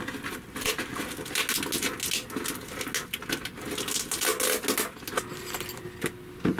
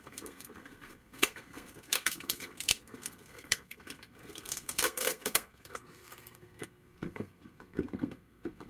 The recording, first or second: first